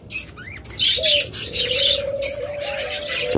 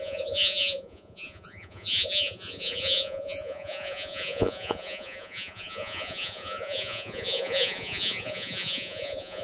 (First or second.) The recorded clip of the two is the first